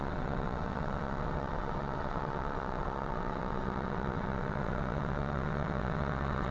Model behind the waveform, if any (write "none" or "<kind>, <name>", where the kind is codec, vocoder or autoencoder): vocoder, WaveNeXt